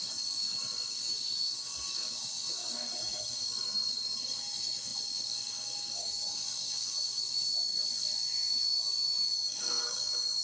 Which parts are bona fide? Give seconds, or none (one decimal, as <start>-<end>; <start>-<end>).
none